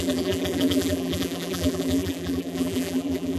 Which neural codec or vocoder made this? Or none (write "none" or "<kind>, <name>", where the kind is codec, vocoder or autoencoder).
vocoder, BigVGAN v2